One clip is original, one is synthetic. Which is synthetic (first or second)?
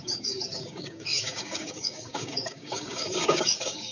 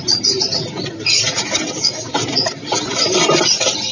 first